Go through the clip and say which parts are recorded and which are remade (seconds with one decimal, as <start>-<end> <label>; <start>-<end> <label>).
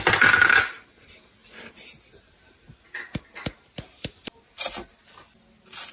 0.0-5.9 recorded